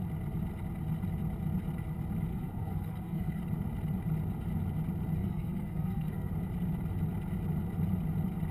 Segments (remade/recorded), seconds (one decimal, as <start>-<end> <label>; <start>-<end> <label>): 0.0-2.3 recorded; 2.3-3.4 remade; 3.4-5.2 recorded; 5.2-6.3 remade; 6.3-8.5 recorded